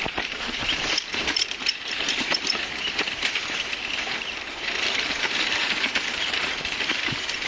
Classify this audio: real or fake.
fake